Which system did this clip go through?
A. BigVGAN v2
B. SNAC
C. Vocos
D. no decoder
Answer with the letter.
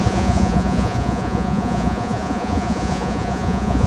C